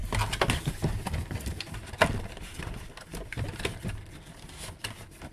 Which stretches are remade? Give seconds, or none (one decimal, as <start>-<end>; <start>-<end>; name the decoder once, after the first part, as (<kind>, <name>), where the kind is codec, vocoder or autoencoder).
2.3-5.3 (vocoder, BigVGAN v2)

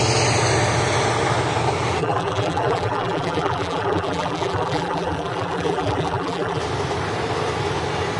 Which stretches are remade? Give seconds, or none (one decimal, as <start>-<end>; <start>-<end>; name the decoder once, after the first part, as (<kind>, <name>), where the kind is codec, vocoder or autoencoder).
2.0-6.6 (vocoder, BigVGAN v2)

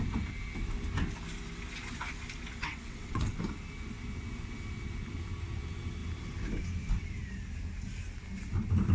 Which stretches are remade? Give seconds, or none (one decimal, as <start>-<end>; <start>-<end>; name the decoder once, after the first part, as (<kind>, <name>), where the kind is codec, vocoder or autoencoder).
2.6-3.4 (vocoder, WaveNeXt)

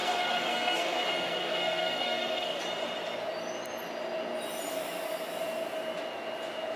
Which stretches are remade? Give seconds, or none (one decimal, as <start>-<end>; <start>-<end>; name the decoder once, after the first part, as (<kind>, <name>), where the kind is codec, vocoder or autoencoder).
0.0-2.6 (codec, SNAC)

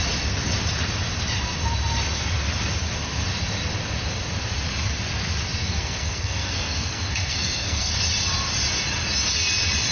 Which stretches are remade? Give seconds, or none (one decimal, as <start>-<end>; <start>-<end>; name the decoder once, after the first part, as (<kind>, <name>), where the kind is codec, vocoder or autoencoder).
5.6-7.9 (codec, SNAC)

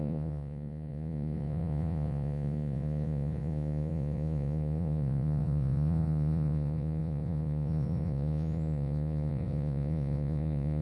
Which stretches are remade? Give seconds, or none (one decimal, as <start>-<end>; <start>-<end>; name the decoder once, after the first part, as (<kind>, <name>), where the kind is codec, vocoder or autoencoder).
0.0-10.8 (vocoder, Vocos)